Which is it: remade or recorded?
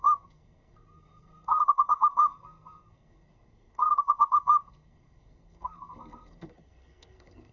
remade